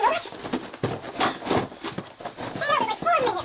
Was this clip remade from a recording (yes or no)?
no